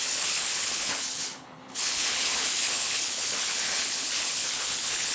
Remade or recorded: remade